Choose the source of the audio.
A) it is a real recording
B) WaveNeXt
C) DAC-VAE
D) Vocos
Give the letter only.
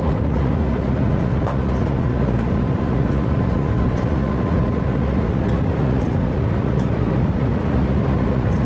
D